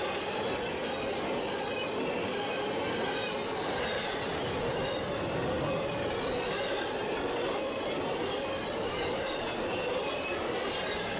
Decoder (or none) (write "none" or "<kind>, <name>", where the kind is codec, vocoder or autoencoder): none